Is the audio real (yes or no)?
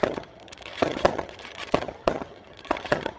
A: no